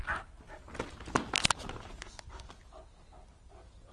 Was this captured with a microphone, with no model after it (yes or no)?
yes